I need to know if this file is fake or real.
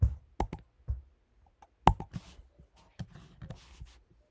real